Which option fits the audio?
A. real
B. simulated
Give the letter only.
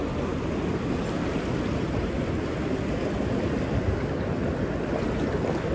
A